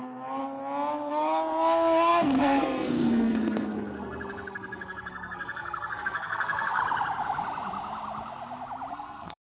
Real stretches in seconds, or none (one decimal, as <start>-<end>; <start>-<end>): 0.4-1.1; 6.8-8.9